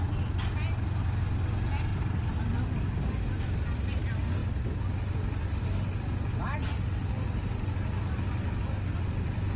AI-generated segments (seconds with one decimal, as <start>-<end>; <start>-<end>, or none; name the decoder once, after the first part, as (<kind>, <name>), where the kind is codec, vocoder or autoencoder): none